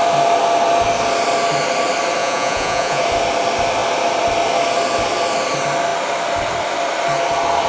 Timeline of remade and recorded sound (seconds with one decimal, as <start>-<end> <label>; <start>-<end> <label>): 0.0-2.2 recorded; 2.2-3.0 remade; 3.0-7.7 recorded